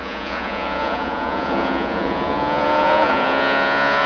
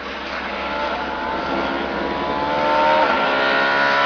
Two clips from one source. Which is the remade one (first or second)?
first